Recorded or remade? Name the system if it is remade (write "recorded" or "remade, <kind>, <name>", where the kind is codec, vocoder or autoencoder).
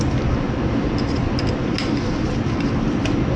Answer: recorded